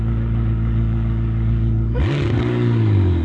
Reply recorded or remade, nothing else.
remade